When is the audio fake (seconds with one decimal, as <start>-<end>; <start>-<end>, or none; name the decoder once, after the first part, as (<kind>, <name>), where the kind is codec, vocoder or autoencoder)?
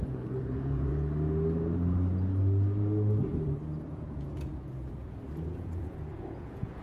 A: 0.0-0.9 (vocoder, Vocos); 3.9-6.8